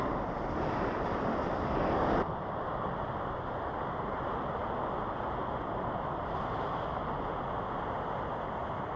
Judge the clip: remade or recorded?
recorded